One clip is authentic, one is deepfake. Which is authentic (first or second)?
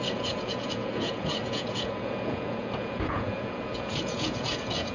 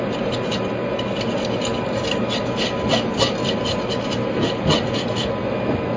second